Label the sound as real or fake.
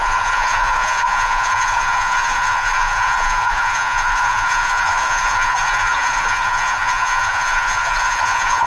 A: fake